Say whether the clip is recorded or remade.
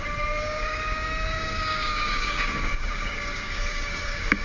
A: remade